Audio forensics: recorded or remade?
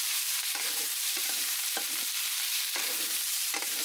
remade